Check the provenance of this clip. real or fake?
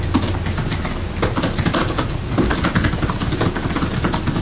real